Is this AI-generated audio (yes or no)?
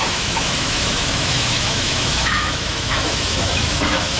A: yes